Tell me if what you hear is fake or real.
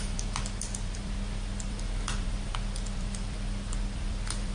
fake